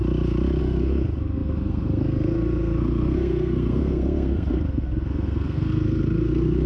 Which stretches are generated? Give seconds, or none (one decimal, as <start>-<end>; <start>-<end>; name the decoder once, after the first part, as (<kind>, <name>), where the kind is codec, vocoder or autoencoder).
0.6-6.7 (codec, SNAC)